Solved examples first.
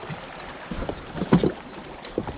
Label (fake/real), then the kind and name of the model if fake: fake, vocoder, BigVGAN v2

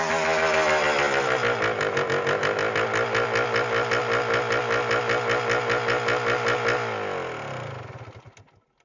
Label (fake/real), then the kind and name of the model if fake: real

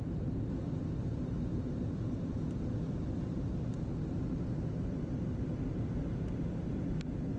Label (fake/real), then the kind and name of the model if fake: fake, vocoder, BigVGAN v2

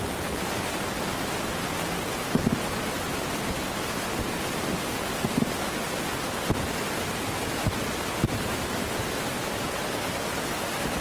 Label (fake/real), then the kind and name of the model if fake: real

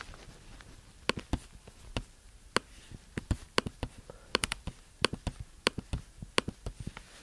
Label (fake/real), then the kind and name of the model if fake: real